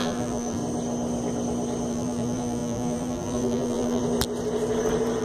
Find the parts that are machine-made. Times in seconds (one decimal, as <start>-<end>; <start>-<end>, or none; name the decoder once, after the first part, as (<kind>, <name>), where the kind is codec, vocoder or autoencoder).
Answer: 0.0-0.6 (vocoder, BigVGAN v2); 1.9-4.0